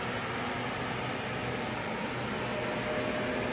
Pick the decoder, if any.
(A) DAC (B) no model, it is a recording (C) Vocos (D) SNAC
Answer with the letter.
B